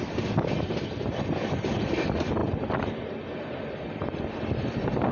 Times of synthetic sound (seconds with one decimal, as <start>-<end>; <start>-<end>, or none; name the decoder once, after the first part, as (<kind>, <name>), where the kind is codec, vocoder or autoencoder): none